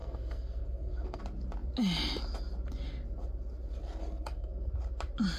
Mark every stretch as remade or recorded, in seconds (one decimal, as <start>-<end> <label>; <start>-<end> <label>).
0.0-1.2 remade; 1.2-4.0 recorded; 4.0-4.7 remade; 4.7-5.4 recorded